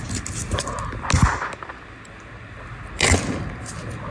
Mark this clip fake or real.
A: real